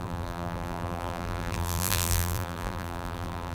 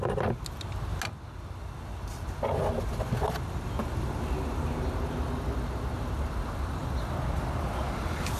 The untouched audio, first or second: second